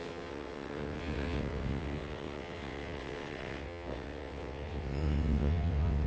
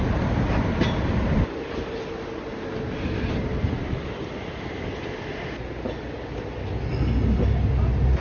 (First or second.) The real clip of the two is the second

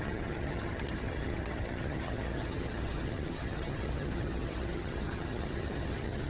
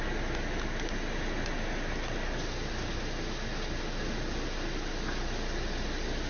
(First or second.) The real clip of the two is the second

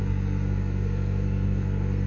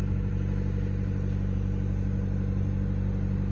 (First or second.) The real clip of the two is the second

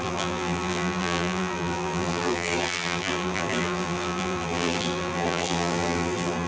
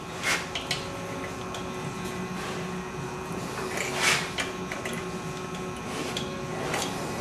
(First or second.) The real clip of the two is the second